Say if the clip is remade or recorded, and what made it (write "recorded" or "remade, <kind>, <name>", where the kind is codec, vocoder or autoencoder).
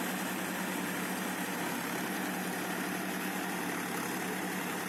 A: recorded